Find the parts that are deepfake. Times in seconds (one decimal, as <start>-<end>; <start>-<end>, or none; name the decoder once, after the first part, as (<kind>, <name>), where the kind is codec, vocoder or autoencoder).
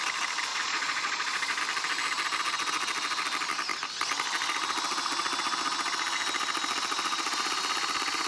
0.5-1.6 (vocoder, Vocos)